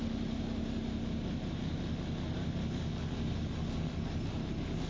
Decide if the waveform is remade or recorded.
recorded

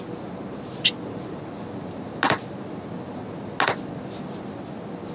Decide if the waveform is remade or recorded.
recorded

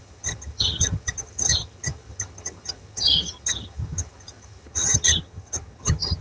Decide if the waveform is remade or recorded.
remade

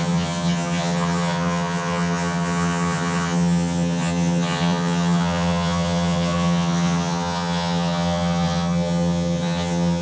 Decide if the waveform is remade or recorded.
remade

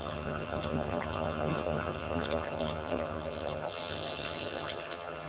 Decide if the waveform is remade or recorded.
remade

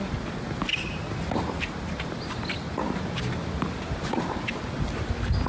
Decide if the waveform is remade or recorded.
recorded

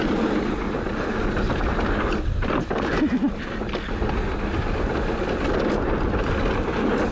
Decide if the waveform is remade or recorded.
recorded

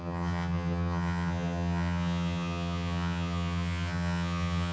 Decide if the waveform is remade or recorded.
remade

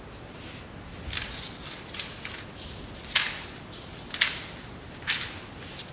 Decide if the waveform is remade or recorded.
recorded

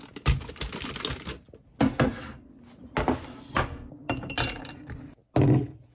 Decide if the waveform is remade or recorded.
recorded